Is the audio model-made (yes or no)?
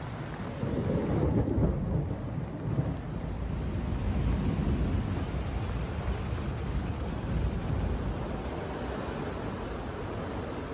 no